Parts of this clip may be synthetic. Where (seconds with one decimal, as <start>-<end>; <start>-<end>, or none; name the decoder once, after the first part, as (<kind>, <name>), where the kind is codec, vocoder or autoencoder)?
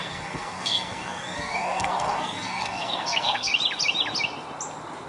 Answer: 0.0-3.5 (codec, SNAC)